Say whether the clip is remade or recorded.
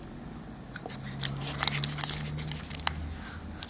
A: recorded